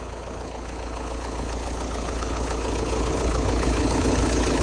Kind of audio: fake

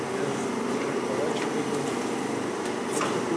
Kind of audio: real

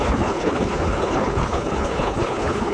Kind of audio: fake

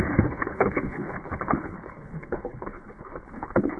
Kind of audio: fake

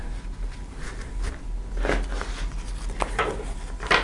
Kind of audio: real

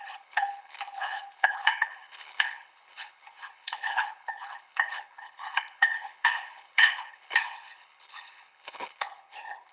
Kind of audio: fake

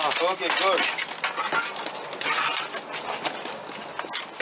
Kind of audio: real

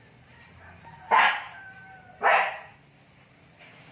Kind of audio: real